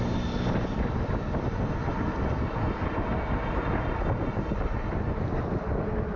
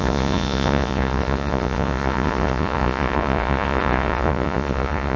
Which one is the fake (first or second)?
second